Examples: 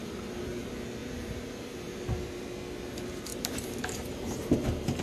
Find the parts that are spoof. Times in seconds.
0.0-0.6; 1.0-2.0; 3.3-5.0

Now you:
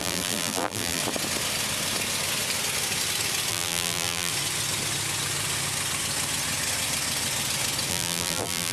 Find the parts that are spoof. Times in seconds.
0.0-1.0; 3.5-4.3; 7.9-8.7

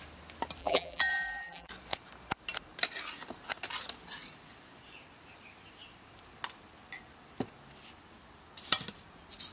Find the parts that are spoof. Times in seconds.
0.6-1.7

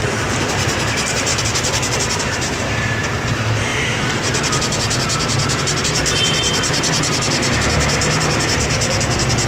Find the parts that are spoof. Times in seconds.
0.0-1.3; 2.2-9.5